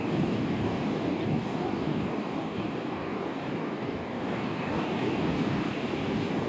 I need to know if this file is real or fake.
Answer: fake